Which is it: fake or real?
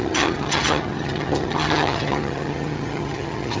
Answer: fake